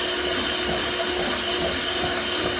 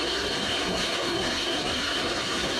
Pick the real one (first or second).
first